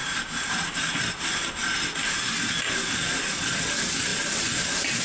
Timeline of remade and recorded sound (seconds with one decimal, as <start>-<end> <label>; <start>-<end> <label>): 0.0-4.1 recorded; 4.1-5.0 remade